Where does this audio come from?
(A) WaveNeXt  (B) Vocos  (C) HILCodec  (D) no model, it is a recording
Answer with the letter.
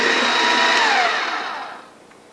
D